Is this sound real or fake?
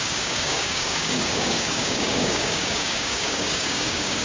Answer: fake